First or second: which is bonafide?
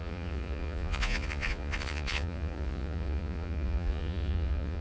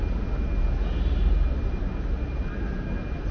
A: second